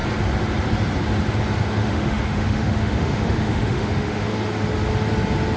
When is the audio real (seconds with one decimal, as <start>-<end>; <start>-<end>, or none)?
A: 0.0-1.8; 4.3-5.6